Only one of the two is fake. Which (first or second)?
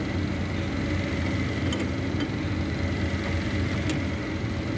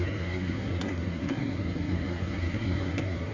second